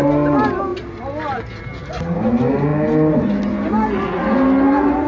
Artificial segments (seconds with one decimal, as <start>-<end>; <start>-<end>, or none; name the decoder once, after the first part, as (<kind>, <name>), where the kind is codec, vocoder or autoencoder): none